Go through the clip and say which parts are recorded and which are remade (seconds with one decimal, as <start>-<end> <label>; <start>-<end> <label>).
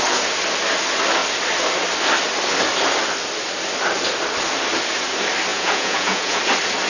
0.0-5.5 recorded; 5.5-6.4 remade; 6.4-6.9 recorded